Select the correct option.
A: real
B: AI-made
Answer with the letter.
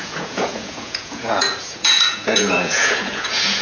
B